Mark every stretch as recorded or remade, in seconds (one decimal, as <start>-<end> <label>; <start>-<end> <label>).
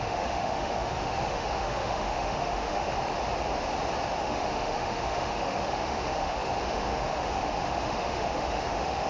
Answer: 0.0-2.9 remade; 2.9-4.2 recorded; 4.2-9.1 remade